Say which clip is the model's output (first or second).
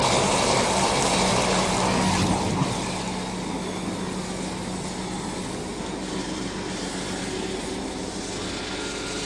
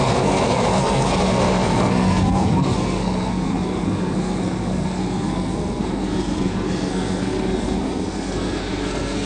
second